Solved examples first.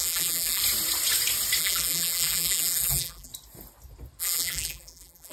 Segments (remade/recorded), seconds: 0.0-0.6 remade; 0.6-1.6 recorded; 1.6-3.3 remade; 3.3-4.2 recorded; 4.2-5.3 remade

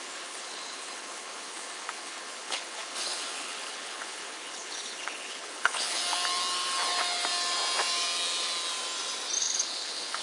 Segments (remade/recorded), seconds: 0.0-6.0 remade; 6.0-9.4 recorded; 9.4-10.2 remade

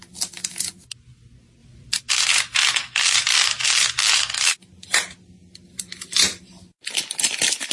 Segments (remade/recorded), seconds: 0.0-1.6 recorded; 1.6-2.1 remade; 2.1-7.7 recorded

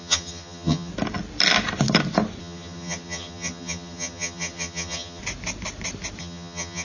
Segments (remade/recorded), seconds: 0.0-0.9 remade; 0.9-2.4 recorded; 2.4-5.2 remade; 5.2-6.2 recorded; 6.2-6.8 remade

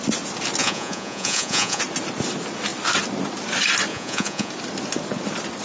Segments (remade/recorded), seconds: 0.0-0.6 recorded; 0.6-1.8 remade; 1.8-3.9 recorded; 3.9-4.5 remade; 4.5-5.6 recorded

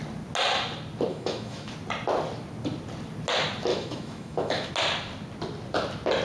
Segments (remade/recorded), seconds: 0.0-1.1 recorded; 1.1-1.7 remade; 1.7-3.7 recorded; 3.7-4.7 remade; 4.7-6.2 recorded

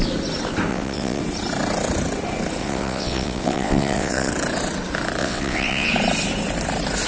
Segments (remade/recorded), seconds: 0.0-0.7 recorded; 0.7-1.2 remade; 1.2-2.6 recorded; 2.6-4.3 remade; 4.3-5.2 recorded; 5.2-5.9 remade; 5.9-7.1 recorded